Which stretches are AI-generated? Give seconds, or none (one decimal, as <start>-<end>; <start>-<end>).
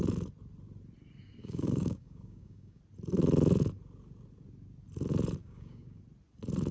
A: 1.4-2.8; 5.4-6.0